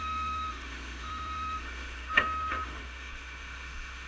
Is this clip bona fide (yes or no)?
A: no